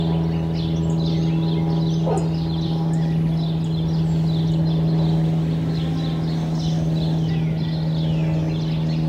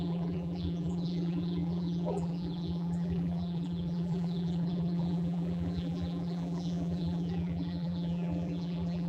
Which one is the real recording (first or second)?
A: first